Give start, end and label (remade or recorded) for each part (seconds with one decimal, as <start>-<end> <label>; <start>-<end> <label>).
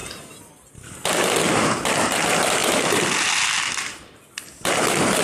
0.0-5.2 recorded